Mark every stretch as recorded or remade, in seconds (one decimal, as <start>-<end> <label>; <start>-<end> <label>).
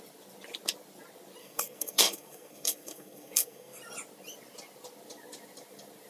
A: 0.0-1.4 recorded; 1.4-3.8 remade; 3.8-6.1 recorded